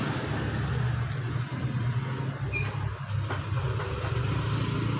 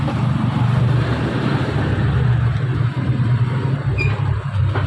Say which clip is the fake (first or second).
second